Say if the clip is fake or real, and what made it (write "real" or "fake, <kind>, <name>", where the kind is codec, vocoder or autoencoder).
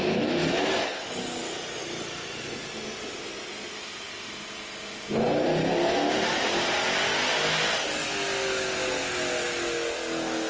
real